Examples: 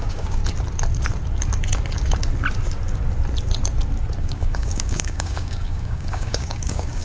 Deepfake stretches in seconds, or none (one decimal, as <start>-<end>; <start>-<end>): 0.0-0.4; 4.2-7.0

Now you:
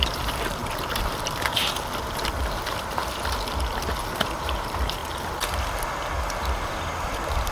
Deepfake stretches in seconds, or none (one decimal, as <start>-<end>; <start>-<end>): 0.0-0.6; 4.0-5.0; 7.1-7.5

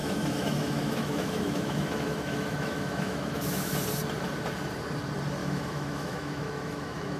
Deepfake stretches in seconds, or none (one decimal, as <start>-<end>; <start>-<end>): 0.0-3.8; 5.4-7.2

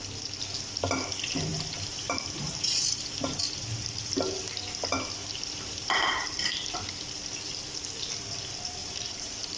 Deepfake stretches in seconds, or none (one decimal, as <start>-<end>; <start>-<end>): 1.5-3.4; 5.2-6.8; 8.8-9.6

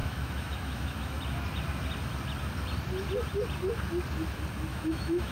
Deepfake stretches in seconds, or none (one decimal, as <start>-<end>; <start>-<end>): 0.0-1.2; 4.7-5.3

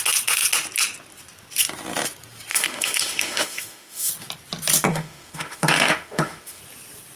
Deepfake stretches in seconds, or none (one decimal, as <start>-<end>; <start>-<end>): 2.5-4.1; 4.9-6.6

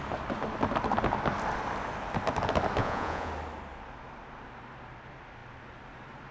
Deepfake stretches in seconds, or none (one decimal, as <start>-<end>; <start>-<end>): 2.8-3.3